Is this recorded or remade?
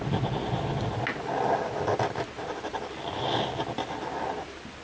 recorded